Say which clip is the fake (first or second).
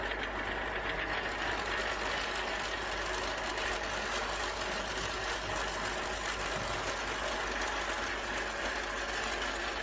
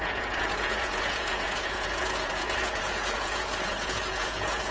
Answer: second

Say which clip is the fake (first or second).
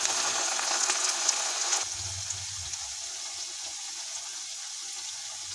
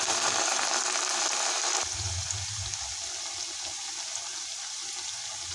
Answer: first